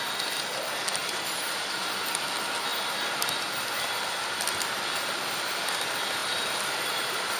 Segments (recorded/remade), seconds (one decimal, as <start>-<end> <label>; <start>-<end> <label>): 0.0-1.0 recorded; 1.0-1.9 remade; 1.9-7.4 recorded